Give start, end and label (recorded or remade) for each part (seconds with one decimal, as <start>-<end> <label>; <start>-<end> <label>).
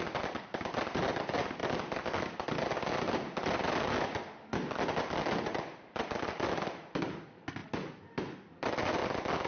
0.0-9.5 recorded